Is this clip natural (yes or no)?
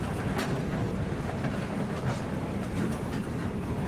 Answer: yes